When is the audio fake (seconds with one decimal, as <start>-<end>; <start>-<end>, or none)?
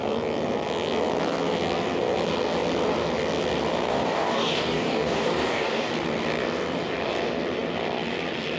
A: 3.9-5.9